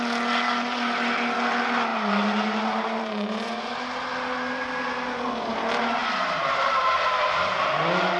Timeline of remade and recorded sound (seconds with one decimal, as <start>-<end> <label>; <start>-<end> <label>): 0.0-8.2 recorded